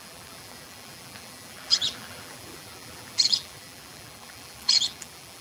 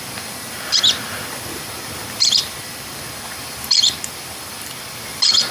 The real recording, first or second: second